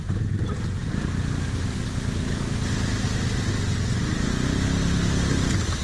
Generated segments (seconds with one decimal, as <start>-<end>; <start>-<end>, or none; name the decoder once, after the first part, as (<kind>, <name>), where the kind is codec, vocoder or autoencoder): none